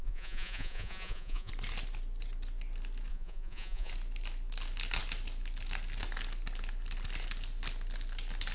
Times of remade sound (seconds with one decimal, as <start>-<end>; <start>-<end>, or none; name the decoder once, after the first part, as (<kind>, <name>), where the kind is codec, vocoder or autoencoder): 0.0-1.5 (vocoder, Vocos); 3.1-3.9